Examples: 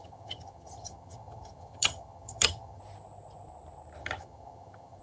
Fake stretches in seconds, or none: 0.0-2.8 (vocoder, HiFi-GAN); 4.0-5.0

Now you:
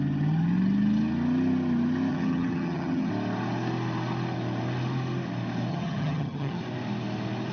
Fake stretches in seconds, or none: 2.1-3.1 (vocoder, HiFi-GAN); 5.7-6.6

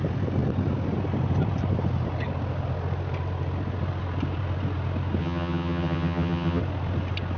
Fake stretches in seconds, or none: 5.2-6.6 (vocoder, HiFi-GAN)